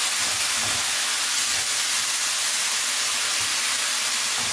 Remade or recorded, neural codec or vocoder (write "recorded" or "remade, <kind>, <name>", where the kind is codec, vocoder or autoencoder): recorded